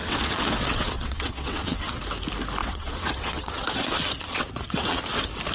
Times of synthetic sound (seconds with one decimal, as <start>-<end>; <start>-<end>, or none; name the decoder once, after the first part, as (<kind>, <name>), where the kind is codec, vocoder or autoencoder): 0.0-2.0 (vocoder, WaveNeXt); 2.6-5.0